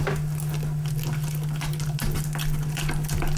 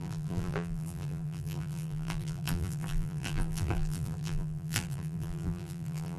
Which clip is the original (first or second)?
first